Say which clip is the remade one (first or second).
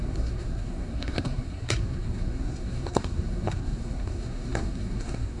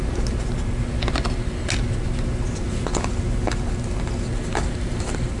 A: first